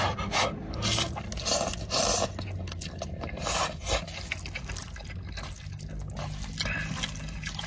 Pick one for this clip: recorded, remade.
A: recorded